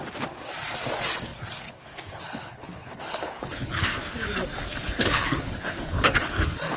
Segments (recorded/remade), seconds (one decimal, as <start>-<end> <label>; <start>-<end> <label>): 0.0-1.3 recorded; 1.3-3.9 remade; 3.9-4.8 recorded; 4.8-6.8 remade